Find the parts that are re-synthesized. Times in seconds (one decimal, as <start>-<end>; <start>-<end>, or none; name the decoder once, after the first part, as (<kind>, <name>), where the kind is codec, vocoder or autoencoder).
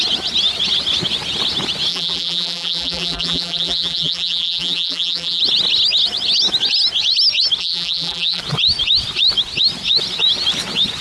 1.9-5.4 (vocoder, BigVGAN v2); 7.6-8.4